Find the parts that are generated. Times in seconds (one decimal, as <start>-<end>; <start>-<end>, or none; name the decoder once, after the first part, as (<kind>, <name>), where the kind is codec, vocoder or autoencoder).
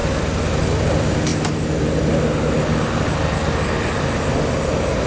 none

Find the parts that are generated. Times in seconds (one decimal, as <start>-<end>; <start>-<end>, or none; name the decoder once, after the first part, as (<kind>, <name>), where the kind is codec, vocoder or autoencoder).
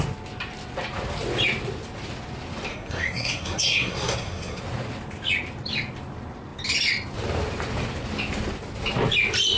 2.7-4.6 (codec, SNAC)